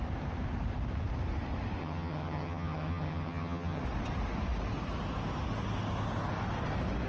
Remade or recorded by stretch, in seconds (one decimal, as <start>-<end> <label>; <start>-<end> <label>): 0.0-1.8 recorded; 1.8-3.8 remade; 3.8-7.1 recorded